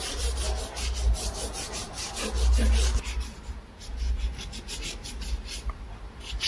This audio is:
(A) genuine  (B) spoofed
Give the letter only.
A